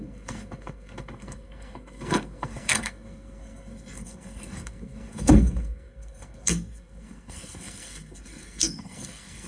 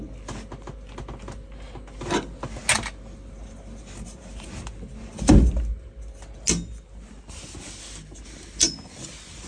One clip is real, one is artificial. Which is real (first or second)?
second